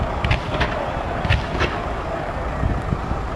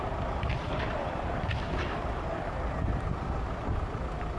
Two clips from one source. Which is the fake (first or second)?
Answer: second